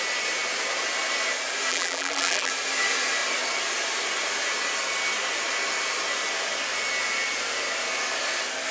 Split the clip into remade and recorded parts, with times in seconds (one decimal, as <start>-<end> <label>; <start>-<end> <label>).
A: 0.0-1.7 recorded; 1.7-2.5 remade; 2.5-8.7 recorded